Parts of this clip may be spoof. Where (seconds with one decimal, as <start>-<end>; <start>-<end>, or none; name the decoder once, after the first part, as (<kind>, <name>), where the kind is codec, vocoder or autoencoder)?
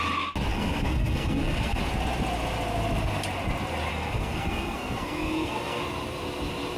0.5-1.8 (codec, SNAC); 3.9-5.8